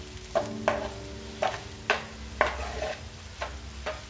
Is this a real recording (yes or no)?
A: yes